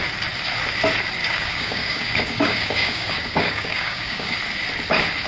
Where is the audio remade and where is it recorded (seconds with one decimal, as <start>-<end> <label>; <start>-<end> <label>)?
0.0-1.2 recorded; 1.2-4.4 remade; 4.4-5.3 recorded